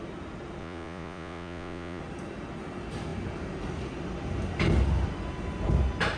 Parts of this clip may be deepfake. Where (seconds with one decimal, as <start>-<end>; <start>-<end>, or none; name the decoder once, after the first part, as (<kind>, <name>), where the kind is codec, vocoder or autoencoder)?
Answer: 0.6-2.0 (vocoder, Vocos)